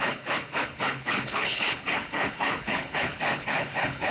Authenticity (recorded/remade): remade